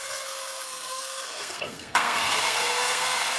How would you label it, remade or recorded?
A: remade